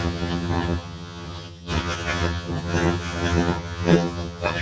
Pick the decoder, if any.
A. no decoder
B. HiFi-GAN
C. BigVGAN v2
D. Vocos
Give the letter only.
B